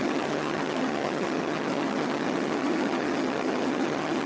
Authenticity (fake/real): fake